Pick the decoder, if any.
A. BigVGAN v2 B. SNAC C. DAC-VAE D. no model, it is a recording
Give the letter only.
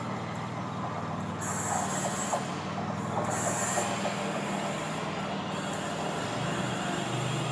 D